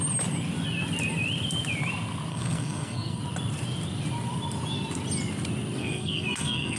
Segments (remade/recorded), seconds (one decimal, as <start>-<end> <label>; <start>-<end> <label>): 0.0-2.3 recorded; 2.3-3.2 remade; 3.2-5.8 recorded; 5.8-6.8 remade